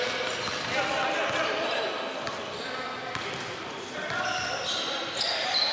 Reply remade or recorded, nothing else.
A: recorded